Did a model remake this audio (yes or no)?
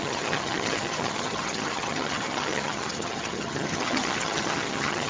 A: yes